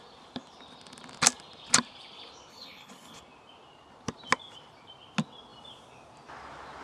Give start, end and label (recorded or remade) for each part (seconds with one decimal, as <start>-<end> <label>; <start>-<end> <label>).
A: 0.0-2.5 recorded; 2.5-3.2 remade; 3.2-6.8 recorded